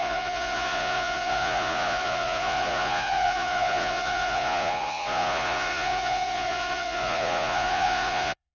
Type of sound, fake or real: fake